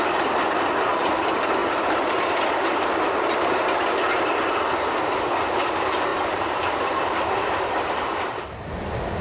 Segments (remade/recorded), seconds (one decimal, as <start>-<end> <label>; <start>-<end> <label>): 0.0-6.1 recorded; 6.1-8.7 remade; 8.7-9.2 recorded